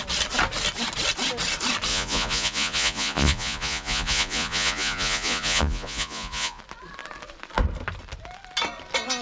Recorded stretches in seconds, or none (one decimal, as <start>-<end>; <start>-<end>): 0.0-1.9; 6.6-9.2

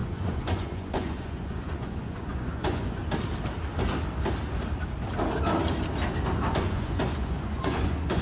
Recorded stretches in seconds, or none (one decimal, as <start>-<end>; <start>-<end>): 3.0-6.5

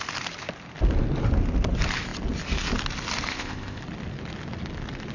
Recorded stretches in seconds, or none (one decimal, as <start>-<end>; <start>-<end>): 0.0-3.3; 3.8-5.1